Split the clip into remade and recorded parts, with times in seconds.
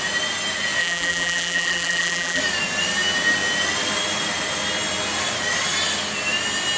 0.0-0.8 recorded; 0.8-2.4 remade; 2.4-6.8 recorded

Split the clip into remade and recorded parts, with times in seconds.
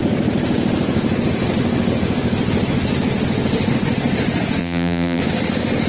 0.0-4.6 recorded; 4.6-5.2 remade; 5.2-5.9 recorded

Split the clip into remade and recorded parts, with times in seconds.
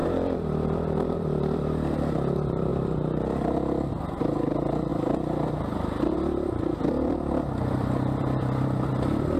0.0-2.0 remade; 2.0-4.9 recorded; 4.9-8.9 remade; 8.9-9.4 recorded